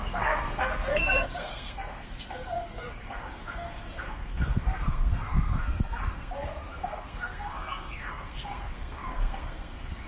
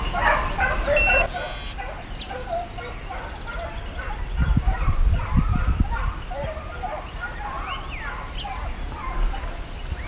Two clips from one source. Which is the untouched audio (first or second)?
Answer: second